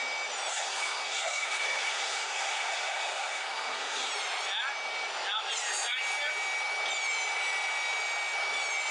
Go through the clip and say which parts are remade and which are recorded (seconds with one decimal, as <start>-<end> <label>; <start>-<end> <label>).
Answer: 0.0-0.5 recorded; 0.5-4.1 remade; 4.1-8.9 recorded